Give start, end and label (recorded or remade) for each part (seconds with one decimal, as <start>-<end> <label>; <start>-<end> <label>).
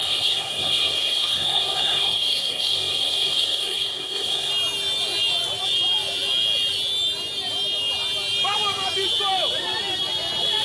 0.0-4.5 remade; 4.5-10.6 recorded